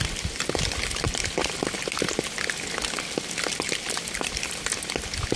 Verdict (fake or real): real